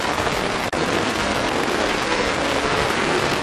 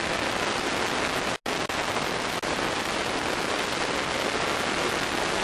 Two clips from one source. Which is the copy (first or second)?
first